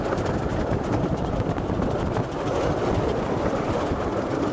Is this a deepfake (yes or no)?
yes